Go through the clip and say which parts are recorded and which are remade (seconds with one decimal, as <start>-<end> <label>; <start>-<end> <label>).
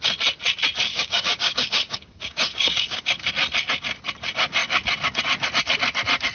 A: 0.0-0.9 recorded; 0.9-3.3 remade; 3.3-6.3 recorded